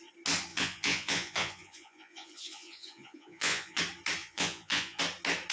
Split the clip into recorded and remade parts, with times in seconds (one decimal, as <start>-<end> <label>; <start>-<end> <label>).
0.0-0.5 recorded; 0.5-3.8 remade; 3.8-4.2 recorded; 4.2-5.0 remade; 5.0-5.5 recorded